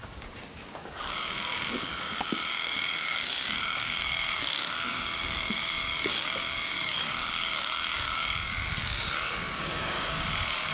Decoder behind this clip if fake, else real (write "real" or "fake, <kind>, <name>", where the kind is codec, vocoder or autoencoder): fake, codec, DAC